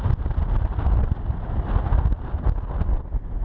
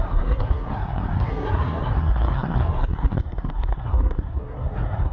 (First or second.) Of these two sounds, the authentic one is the first